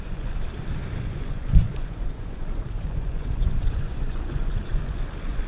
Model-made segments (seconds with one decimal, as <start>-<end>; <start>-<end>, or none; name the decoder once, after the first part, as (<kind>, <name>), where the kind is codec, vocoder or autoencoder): 0.0-0.4 (vocoder, Vocos); 1.0-5.5